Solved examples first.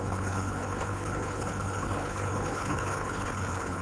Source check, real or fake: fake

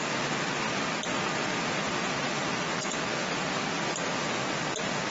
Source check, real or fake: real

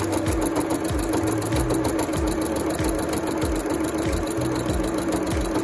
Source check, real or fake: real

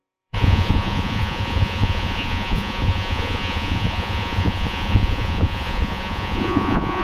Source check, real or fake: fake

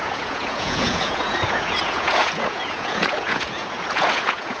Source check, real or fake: fake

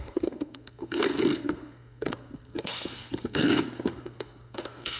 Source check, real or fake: fake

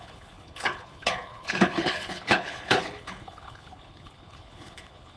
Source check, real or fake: fake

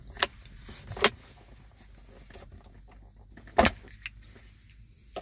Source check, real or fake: real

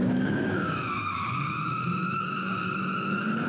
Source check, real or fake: fake